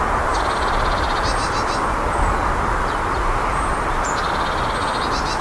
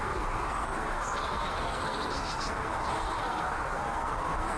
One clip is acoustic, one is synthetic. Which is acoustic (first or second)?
first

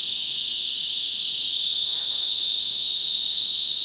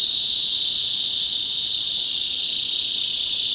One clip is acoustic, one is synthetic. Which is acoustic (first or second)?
second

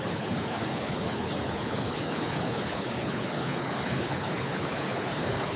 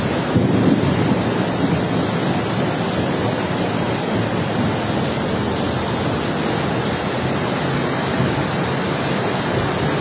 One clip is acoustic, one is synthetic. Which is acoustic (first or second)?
second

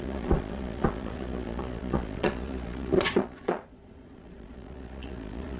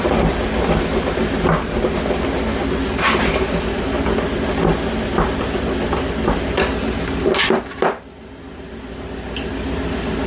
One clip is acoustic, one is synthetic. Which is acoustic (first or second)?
second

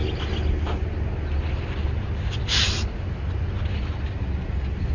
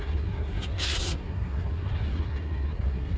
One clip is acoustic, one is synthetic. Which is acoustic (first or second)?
first